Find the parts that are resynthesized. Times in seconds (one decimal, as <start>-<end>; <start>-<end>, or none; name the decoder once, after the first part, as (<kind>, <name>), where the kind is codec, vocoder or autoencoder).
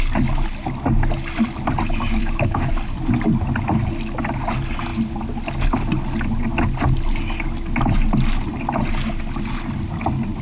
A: 2.2-2.7 (autoencoder, DAC-VAE)